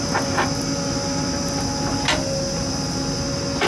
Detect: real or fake real